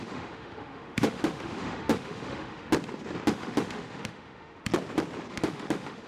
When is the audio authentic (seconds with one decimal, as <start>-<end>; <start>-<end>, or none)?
2.7-3.3; 4.7-5.3